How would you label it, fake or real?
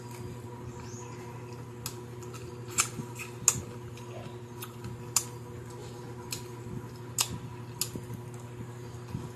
real